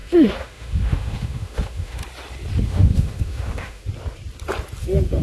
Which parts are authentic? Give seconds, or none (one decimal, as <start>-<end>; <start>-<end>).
2.0-2.6; 3.8-4.8